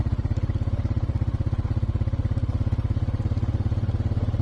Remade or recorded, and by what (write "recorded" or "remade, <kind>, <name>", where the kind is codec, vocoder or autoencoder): remade, vocoder, BigVGAN v2